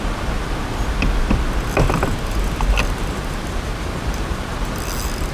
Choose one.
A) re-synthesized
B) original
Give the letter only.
B